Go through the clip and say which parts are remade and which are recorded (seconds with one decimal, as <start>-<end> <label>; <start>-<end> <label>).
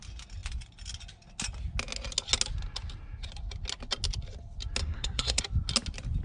0.0-4.8 recorded; 4.8-5.4 remade; 5.4-6.2 recorded